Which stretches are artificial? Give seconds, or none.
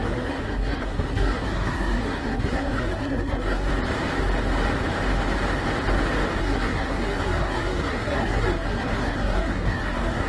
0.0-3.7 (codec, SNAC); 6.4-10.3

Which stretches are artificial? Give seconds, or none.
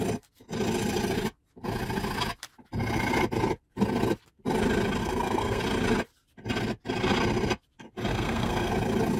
5.0-5.6 (codec, SNAC); 8.1-8.7